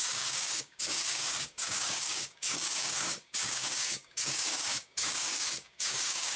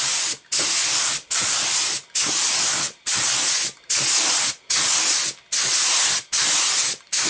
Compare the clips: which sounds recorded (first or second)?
second